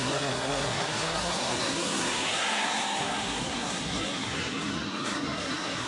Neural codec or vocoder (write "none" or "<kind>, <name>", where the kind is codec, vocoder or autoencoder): codec, SNAC